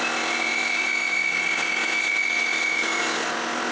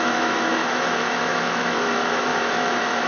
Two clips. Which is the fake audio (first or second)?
second